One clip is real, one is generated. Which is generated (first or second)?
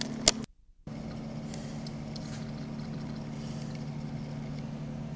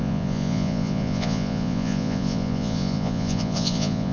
second